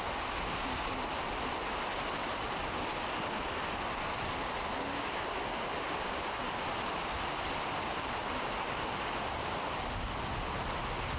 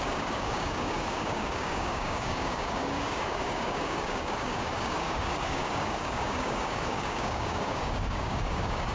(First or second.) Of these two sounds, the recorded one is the first